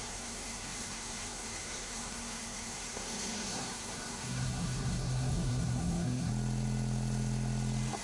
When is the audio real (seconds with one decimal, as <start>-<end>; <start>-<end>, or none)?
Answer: 6.3-8.0